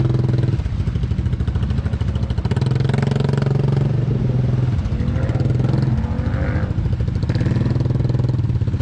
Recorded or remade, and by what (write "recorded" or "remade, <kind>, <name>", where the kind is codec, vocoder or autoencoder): recorded